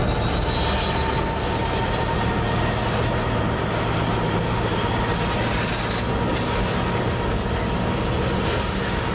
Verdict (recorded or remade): recorded